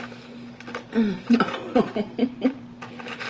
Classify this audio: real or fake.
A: real